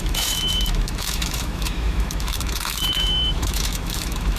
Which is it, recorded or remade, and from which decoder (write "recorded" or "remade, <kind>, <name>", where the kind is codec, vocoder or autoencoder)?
remade, autoencoder, DAC-VAE